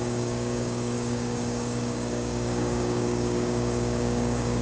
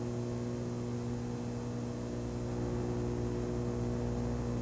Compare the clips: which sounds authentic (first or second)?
second